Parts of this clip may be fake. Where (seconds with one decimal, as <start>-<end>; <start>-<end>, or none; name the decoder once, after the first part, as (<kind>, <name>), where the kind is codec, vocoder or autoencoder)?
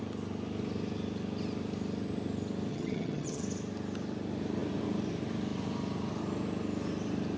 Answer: 2.7-3.4 (vocoder, HiFi-GAN)